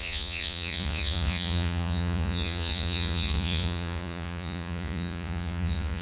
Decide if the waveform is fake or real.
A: fake